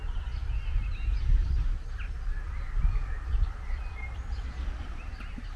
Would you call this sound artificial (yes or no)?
no